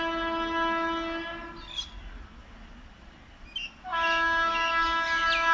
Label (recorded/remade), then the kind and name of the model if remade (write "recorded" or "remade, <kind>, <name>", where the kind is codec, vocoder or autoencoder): recorded